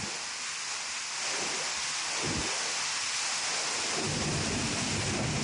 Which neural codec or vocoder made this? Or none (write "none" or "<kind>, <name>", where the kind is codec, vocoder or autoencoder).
none